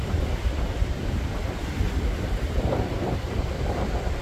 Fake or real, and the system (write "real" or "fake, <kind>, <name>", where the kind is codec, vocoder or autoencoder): fake, vocoder, BigVGAN v2